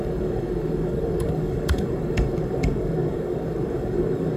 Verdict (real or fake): fake